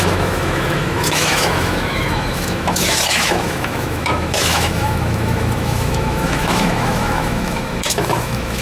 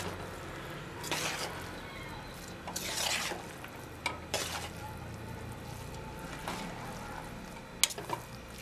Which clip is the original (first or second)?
second